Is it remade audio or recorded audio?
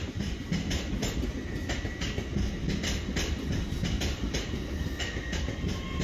recorded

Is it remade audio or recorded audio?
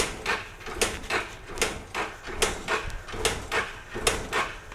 recorded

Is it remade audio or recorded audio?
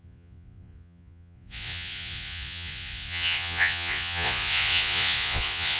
remade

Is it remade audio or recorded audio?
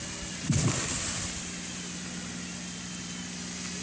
recorded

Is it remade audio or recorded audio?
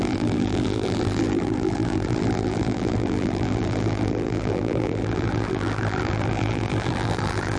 remade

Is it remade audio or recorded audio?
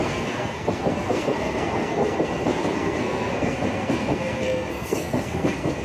remade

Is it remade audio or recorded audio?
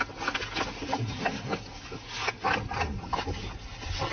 recorded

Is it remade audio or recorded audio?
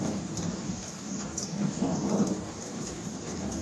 remade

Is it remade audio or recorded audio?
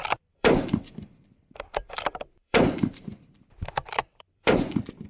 remade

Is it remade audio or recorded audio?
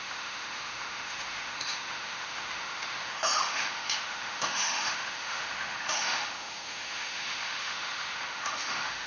remade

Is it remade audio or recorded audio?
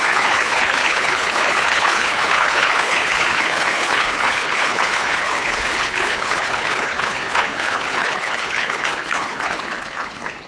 remade